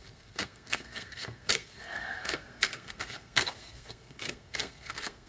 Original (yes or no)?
no